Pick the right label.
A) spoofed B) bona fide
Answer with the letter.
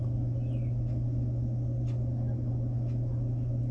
B